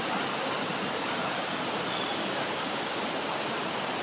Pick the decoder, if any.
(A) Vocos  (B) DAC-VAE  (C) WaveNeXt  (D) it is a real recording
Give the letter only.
D